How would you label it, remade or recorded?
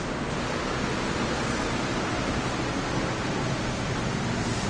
recorded